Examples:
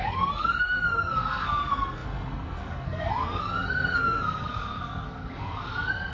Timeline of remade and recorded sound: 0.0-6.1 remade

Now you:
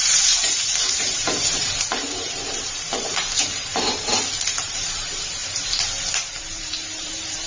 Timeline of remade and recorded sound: 0.0-7.5 remade

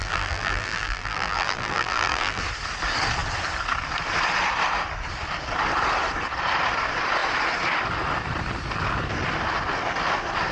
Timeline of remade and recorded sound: 0.0-2.4 remade; 2.4-10.5 recorded

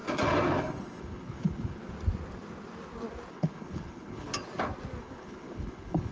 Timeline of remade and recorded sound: 0.0-0.6 recorded; 0.6-1.8 remade; 1.8-3.3 recorded; 3.3-4.3 remade; 4.3-5.0 recorded; 5.0-6.1 remade

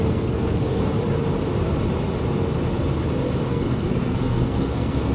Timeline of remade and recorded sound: 0.0-0.8 remade; 0.8-3.5 recorded; 3.5-5.1 remade